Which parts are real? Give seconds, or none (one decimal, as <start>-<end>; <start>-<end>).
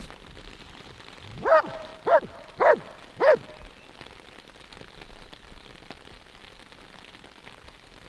0.0-8.1